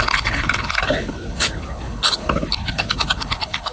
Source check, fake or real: fake